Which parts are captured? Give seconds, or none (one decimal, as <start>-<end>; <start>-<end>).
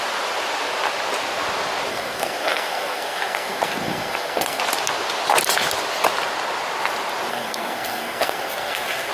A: 0.0-1.9; 4.6-7.3